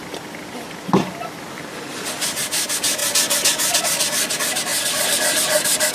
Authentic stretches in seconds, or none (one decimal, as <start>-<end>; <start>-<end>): 3.0-3.8